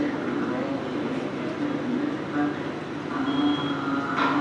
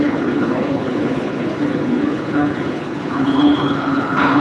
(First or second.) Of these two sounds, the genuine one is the first